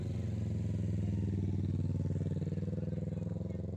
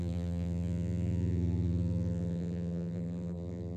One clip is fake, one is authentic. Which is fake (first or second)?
second